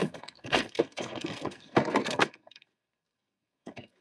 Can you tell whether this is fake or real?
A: fake